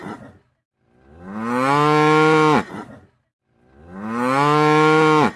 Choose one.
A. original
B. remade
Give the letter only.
A